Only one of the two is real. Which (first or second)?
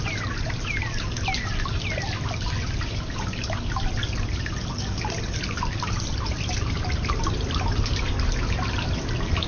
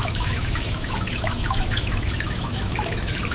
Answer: first